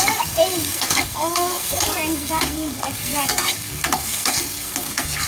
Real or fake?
fake